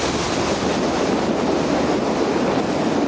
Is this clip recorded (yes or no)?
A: yes